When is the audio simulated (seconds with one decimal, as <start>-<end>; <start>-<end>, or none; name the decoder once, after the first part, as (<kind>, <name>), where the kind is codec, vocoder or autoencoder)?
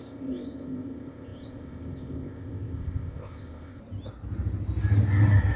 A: 0.0-3.8 (codec, ZipCodec)